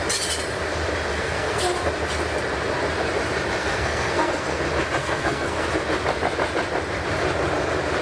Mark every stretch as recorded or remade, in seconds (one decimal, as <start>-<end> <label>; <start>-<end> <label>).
0.0-1.1 recorded; 1.1-1.6 remade; 1.6-3.6 recorded; 3.6-4.6 remade; 4.6-5.0 recorded; 5.0-5.7 remade; 5.7-8.0 recorded